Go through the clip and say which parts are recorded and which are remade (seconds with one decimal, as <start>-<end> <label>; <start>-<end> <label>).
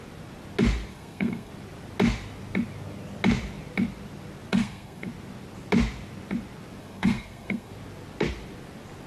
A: 0.0-0.9 recorded; 0.9-1.5 remade; 1.5-4.5 recorded; 4.5-5.1 remade; 5.1-6.8 recorded; 6.8-7.7 remade; 7.7-9.1 recorded